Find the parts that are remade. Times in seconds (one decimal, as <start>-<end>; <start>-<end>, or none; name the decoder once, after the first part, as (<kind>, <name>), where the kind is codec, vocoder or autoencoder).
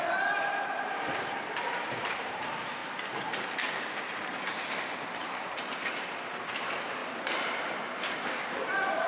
0.0-9.1 (vocoder, BigVGAN v2)